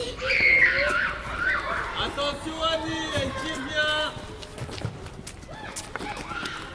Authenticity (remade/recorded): recorded